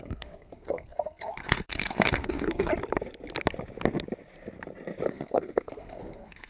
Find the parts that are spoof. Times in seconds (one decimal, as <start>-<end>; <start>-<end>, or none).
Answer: 0.0-2.7; 5.1-6.5